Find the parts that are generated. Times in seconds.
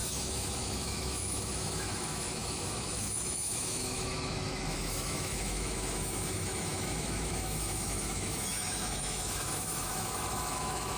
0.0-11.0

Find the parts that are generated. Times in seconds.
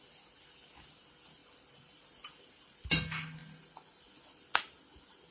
none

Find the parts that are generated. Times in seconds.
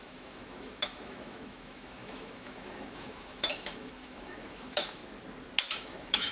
0.0-5.0; 5.7-6.3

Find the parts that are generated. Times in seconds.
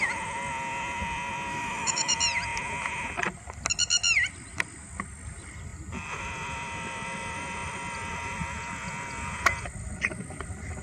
1.5-2.1